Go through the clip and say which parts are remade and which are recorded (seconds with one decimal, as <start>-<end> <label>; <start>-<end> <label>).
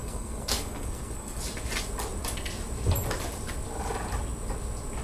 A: 0.0-1.4 remade; 1.4-5.0 recorded